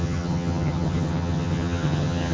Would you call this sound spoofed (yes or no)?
yes